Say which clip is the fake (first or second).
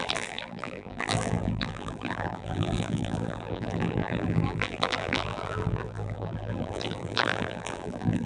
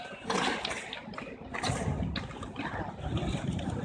first